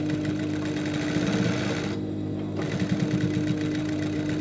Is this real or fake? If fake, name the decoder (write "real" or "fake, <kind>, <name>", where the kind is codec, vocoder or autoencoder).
real